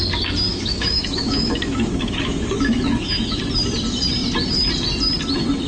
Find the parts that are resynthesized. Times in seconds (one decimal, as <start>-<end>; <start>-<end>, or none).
0.5-3.4